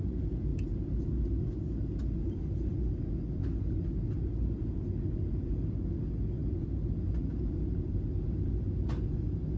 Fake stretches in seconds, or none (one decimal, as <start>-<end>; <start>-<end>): none